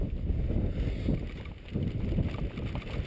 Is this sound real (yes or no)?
yes